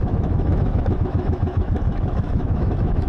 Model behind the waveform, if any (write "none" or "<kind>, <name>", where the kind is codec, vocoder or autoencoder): autoencoder, DAC-VAE